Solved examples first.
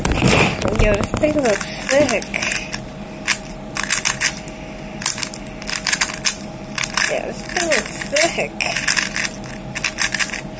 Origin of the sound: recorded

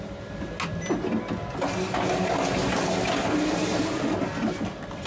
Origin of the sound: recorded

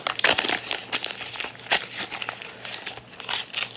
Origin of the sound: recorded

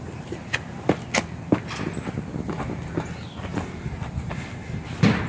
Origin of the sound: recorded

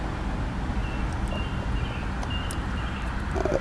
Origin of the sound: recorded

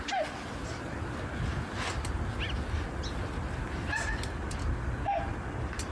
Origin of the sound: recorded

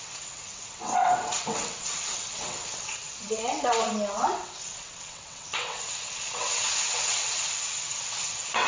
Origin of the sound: remade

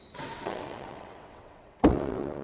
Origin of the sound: remade